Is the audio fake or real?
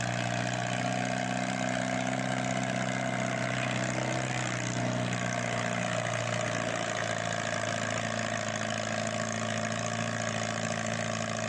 real